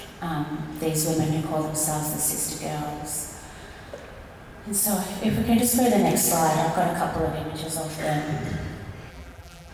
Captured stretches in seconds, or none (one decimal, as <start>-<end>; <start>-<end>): 0.0-9.1